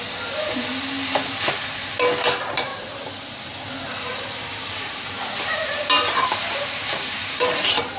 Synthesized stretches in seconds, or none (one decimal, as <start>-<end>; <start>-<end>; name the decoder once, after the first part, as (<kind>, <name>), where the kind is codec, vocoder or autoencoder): 2.7-3.4 (vocoder, BigVGAN v2); 4.1-8.0